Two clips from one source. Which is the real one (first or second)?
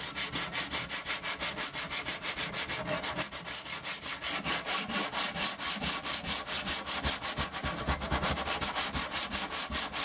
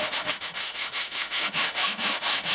first